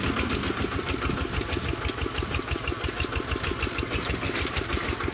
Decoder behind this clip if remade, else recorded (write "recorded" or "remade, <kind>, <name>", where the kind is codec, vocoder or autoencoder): recorded